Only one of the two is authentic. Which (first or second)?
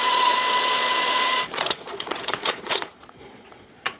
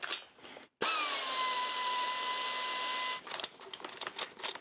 second